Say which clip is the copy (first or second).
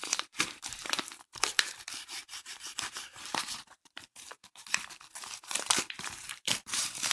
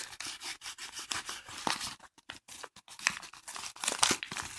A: first